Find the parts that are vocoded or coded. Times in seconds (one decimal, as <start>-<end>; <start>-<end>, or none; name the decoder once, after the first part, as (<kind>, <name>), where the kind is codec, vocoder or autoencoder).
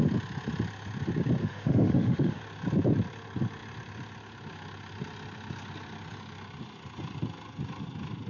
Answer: 1.4-2.4 (autoencoder, DAC-VAE)